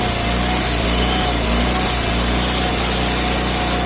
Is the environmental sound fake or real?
real